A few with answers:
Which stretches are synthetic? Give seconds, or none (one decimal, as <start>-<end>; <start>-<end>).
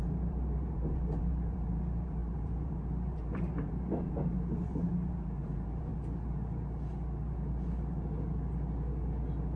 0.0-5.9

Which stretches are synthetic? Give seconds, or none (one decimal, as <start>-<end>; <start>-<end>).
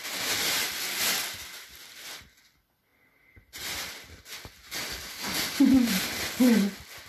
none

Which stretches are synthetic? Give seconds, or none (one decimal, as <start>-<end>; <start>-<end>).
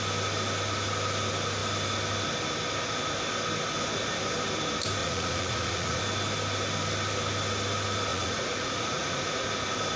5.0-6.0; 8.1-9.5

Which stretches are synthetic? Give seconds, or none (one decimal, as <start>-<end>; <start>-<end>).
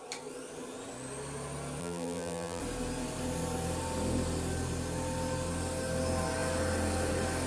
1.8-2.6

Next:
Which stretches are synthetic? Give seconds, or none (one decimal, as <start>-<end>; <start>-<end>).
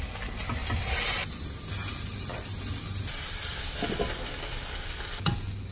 none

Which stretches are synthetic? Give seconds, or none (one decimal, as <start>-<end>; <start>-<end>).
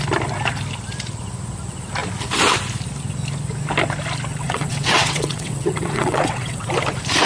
4.3-6.7